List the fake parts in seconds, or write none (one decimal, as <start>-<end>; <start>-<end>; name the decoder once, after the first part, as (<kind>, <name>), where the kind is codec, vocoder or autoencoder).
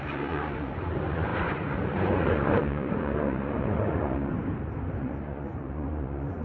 0.0-4.3 (vocoder, Vocos); 5.0-6.4